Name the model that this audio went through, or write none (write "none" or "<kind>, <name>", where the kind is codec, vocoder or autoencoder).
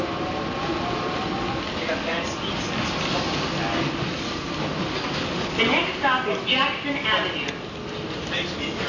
none